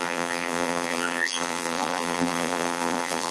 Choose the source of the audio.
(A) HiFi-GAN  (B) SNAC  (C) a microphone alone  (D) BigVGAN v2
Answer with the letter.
D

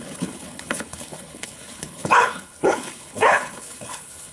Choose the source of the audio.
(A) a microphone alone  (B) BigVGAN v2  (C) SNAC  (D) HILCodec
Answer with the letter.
D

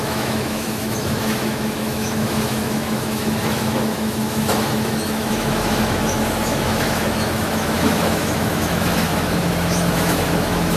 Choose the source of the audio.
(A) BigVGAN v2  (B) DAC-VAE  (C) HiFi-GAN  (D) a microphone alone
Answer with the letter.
B